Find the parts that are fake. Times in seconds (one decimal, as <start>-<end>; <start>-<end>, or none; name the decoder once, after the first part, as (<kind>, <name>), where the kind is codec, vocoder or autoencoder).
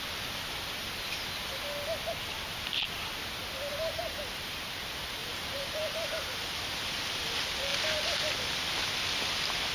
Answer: 4.0-4.8 (vocoder, BigVGAN v2); 5.2-6.1